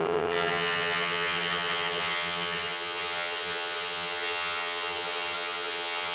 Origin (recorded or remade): remade